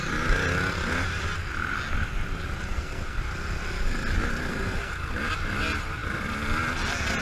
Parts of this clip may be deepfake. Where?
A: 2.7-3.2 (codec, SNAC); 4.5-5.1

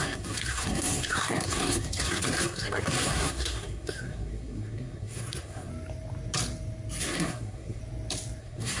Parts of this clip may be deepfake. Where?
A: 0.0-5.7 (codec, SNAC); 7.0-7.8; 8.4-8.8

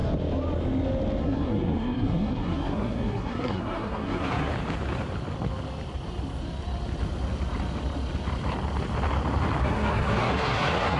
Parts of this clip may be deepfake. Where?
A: 1.2-4.5 (codec, SNAC); 9.6-11.0

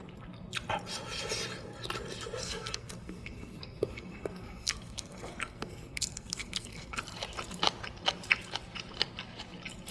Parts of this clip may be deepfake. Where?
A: 2.4-7.0 (codec, SNAC)

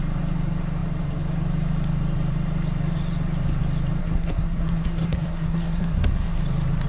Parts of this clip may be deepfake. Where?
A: 4.0-6.4 (codec, SNAC)

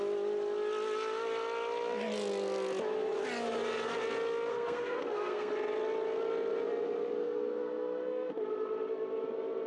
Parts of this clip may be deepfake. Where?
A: 4.5-5.5 (codec, SNAC); 7.2-8.3

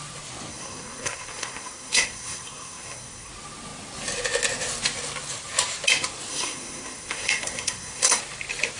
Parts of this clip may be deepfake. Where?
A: 0.5-3.3 (codec, SNAC); 6.3-8.2

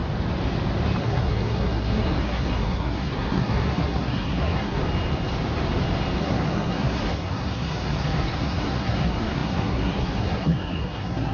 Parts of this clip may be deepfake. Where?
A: 1.0-4.8 (codec, SNAC); 6.2-11.3